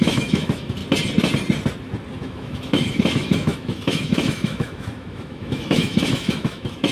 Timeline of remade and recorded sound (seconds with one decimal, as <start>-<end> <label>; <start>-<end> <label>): 0.0-0.8 remade; 0.8-2.2 recorded; 2.2-6.9 remade